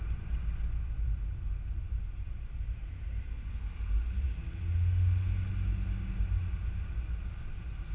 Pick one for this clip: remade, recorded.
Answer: recorded